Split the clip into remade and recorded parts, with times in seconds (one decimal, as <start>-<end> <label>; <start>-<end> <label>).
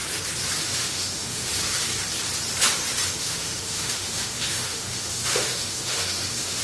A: 0.0-0.6 recorded; 0.6-1.5 remade; 1.5-3.2 recorded; 3.2-6.6 remade